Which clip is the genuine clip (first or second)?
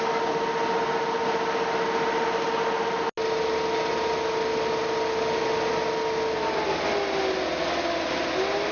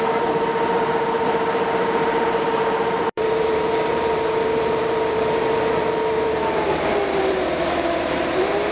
first